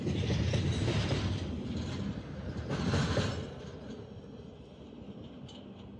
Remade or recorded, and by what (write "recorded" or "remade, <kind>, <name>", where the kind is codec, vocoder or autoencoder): recorded